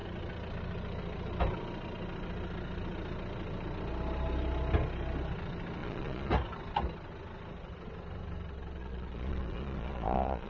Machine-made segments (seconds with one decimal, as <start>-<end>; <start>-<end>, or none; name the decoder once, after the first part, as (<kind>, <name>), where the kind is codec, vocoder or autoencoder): 5.8-6.3 (vocoder, Vocos); 8.8-10.5